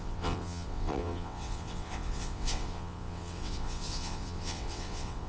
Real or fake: fake